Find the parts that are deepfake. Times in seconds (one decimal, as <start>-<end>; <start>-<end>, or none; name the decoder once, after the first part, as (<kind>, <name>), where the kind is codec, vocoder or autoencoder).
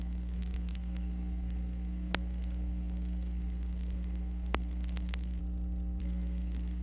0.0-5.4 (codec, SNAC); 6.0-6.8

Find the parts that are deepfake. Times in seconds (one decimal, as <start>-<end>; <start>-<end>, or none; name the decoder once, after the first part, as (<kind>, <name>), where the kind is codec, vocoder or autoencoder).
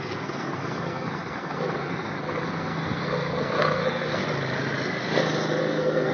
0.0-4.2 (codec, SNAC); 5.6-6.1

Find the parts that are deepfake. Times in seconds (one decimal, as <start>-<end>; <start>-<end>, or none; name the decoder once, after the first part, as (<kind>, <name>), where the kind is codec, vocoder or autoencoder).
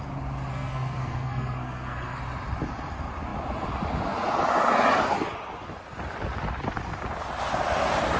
0.5-2.2 (codec, SNAC)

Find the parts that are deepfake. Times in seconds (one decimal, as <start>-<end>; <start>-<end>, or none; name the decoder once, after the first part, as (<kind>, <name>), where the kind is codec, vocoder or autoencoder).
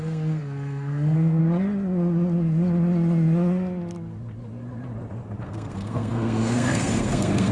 0.0-1.4 (codec, SNAC); 5.4-7.5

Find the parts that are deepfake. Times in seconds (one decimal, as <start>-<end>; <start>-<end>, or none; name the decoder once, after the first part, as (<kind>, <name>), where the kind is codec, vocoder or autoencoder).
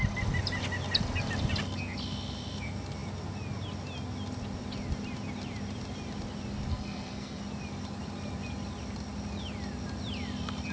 6.7-7.4 (codec, SNAC)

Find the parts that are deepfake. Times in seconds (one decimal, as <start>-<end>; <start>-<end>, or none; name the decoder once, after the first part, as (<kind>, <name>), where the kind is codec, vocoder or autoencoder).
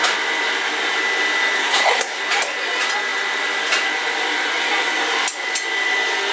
1.6-2.2 (codec, SNAC)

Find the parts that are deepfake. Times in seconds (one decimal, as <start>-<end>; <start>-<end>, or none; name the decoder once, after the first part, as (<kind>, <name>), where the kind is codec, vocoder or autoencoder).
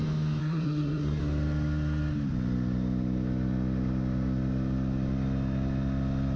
0.4-1.2 (codec, SNAC)